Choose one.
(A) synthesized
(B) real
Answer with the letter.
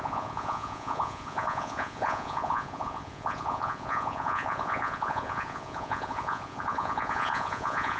A